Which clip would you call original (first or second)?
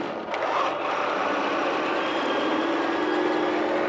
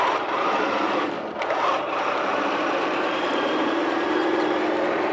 first